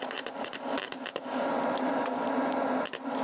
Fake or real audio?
real